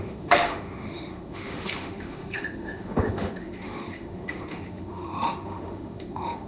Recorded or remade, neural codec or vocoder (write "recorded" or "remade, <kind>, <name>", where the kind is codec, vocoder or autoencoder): remade, autoencoder, DAC-VAE